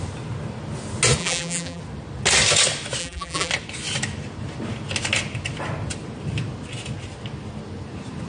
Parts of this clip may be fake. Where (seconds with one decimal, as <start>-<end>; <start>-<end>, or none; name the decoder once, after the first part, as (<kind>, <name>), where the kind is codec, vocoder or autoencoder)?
1.2-1.8 (vocoder, BigVGAN v2); 3.0-3.5